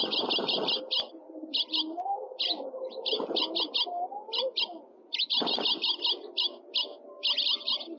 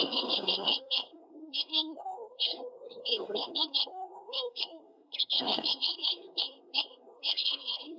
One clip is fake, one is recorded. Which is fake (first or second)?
second